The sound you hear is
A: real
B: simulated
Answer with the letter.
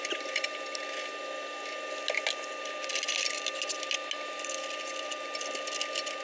A